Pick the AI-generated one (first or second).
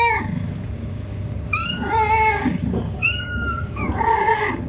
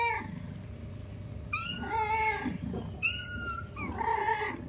first